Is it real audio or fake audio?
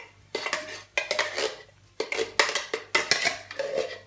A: real